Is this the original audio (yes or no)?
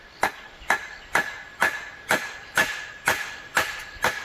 yes